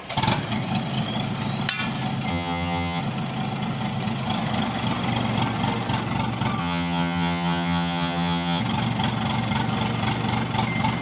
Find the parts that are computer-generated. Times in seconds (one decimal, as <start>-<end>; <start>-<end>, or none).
2.3-3.0; 6.6-8.6